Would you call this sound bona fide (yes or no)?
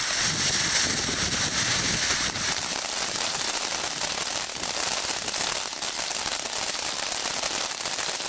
no